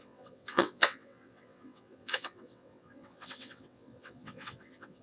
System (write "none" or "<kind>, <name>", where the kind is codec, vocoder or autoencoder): vocoder, WaveNeXt